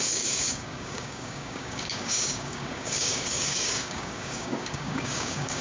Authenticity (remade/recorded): remade